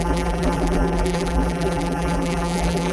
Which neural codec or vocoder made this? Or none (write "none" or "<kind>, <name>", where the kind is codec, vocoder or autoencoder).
vocoder, BigVGAN v2